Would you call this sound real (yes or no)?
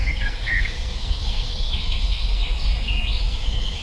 no